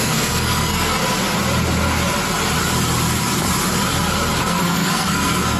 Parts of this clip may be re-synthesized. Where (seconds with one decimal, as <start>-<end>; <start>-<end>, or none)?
0.0-1.0; 4.4-5.6